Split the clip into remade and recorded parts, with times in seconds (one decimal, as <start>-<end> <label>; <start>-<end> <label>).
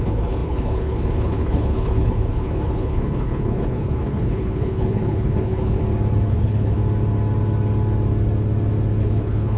0.0-5.8 remade; 5.8-6.3 recorded; 6.3-6.8 remade; 6.8-9.0 recorded; 9.0-9.6 remade